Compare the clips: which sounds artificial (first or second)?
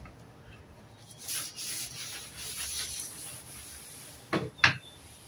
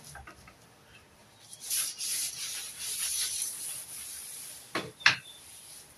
second